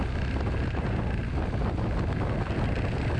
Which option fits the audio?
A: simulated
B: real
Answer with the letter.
B